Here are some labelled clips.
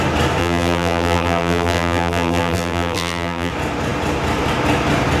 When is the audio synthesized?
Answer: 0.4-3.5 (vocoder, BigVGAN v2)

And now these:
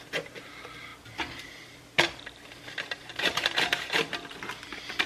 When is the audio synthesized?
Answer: 3.1-3.9 (vocoder, BigVGAN v2)

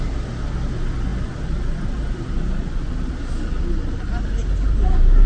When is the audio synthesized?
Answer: none

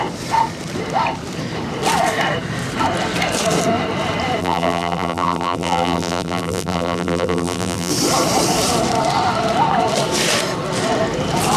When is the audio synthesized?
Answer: 4.4-7.9 (vocoder, BigVGAN v2)

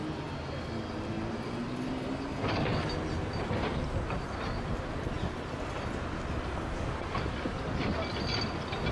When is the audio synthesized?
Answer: none